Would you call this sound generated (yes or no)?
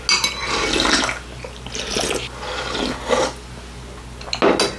no